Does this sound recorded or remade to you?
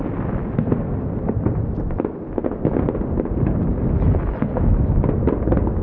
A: recorded